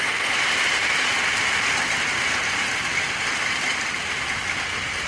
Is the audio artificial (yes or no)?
no